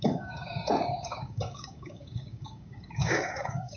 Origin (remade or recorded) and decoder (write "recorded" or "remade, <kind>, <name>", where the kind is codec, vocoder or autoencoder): remade, codec, DAC